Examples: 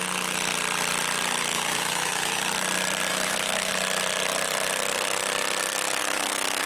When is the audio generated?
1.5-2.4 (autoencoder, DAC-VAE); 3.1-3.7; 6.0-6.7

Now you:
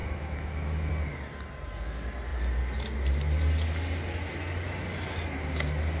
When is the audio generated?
0.0-0.9 (autoencoder, DAC-VAE)

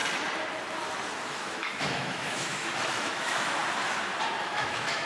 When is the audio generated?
1.3-3.6 (autoencoder, DAC-VAE); 4.4-5.1

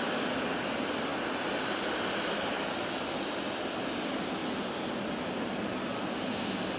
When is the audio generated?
none

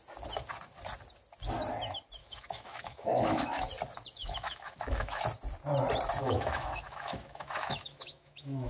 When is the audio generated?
2.2-3.7 (autoencoder, DAC-VAE); 4.2-5.2; 6.2-8.7

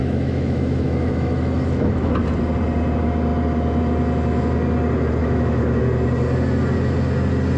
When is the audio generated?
0.0-2.1 (autoencoder, DAC-VAE); 5.2-5.8